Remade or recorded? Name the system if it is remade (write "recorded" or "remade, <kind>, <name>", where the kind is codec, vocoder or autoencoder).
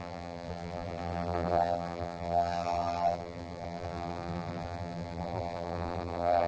remade, vocoder, BigVGAN v2